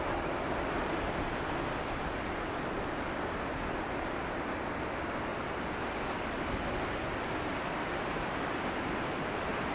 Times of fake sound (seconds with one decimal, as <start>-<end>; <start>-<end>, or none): none